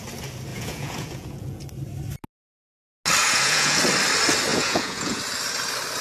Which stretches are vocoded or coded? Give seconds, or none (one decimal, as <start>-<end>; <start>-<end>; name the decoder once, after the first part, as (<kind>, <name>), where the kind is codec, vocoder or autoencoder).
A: 0.5-1.6 (vocoder, Vocos); 3.2-3.8; 4.5-5.2